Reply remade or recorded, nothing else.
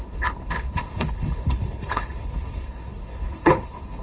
remade